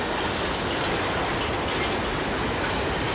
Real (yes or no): yes